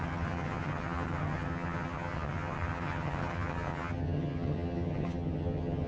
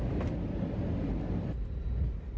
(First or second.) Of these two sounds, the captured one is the second